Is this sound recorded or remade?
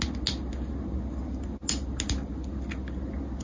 recorded